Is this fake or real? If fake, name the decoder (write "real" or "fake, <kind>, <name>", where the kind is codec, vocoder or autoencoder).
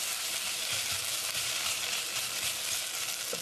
real